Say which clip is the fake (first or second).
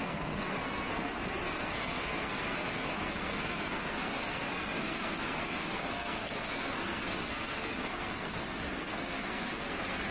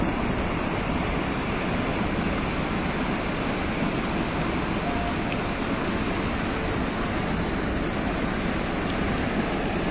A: first